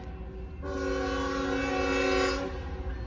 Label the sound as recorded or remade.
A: recorded